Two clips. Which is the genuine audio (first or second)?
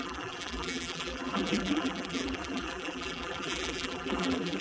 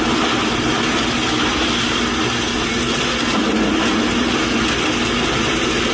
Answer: second